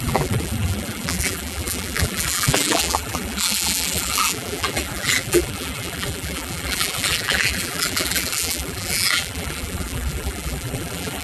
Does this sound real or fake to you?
fake